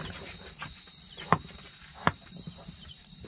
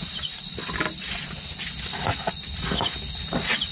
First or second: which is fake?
first